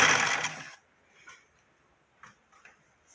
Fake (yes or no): no